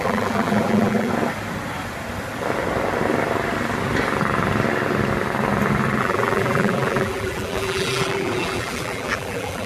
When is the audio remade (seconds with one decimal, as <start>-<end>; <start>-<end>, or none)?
0.0-1.1; 6.0-9.7